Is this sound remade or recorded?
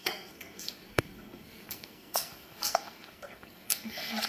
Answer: remade